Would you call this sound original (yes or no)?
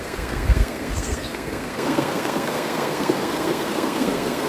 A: no